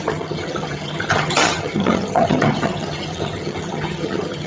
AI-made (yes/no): yes